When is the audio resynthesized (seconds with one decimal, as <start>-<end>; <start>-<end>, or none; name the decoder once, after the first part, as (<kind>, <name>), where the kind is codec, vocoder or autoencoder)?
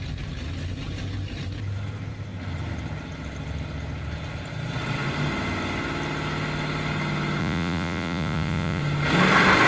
7.4-8.8 (vocoder, Vocos)